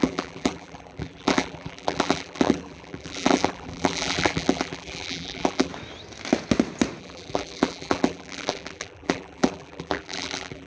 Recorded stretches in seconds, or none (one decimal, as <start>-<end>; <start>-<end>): 5.7-7.0